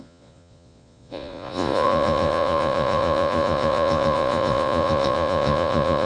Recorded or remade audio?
remade